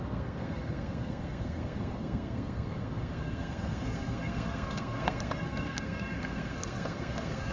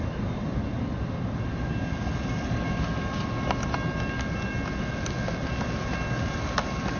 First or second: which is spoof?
first